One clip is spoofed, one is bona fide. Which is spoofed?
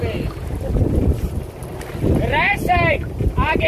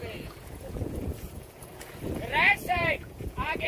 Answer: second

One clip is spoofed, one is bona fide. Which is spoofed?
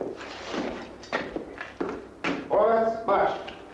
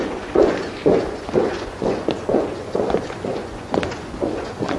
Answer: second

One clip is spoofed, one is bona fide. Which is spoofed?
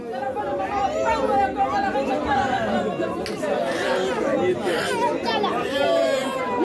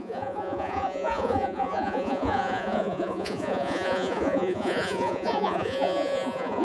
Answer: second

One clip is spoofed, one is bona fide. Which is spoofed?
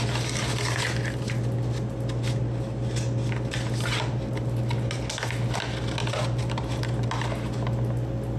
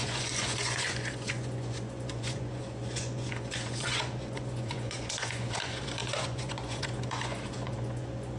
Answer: second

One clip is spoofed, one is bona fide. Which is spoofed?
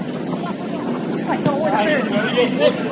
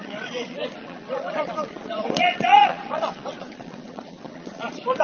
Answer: second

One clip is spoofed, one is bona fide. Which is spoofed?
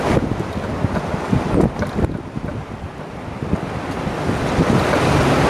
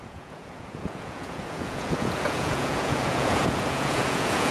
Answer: second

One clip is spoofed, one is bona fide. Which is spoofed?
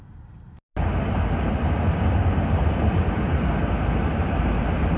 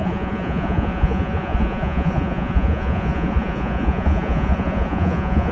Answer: second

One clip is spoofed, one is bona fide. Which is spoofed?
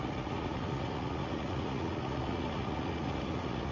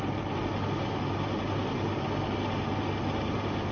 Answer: first